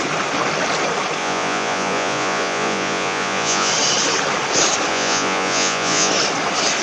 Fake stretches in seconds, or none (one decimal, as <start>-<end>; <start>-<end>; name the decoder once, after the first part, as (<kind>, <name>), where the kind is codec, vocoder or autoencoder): 1.2-3.7 (vocoder, Vocos); 4.9-6.1